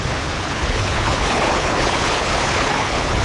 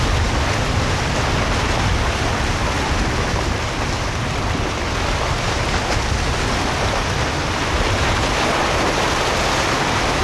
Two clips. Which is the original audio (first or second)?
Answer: second